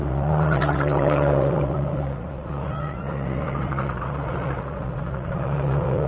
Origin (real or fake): fake